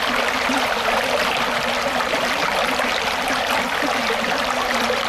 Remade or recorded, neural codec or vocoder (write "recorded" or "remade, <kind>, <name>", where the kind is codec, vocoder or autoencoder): recorded